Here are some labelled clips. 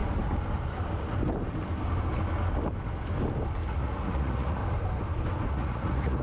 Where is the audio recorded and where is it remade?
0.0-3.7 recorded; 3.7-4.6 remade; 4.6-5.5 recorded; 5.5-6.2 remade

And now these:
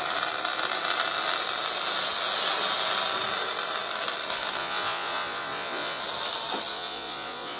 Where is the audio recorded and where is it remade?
0.0-4.6 recorded; 4.6-6.0 remade; 6.0-6.7 recorded; 6.7-7.6 remade

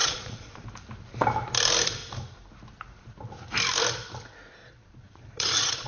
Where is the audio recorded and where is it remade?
0.0-0.6 remade; 0.6-4.6 recorded; 4.6-5.9 remade

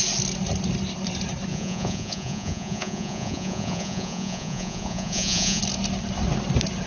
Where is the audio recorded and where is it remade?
0.0-1.5 recorded; 1.5-5.6 remade; 5.6-6.9 recorded

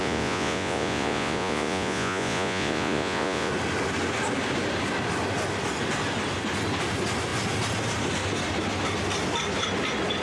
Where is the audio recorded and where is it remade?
0.0-3.5 remade; 3.5-10.2 recorded

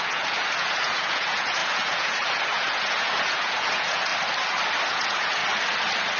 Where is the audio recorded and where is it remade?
0.0-4.1 remade; 4.1-4.9 recorded; 4.9-5.4 remade; 5.4-6.2 recorded

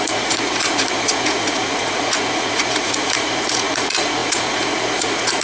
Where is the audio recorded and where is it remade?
0.0-5.4 remade

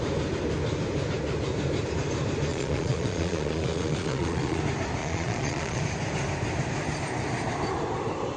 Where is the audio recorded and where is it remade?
0.0-2.5 recorded; 2.5-4.6 remade; 4.6-5.0 recorded; 5.0-5.8 remade; 5.8-8.4 recorded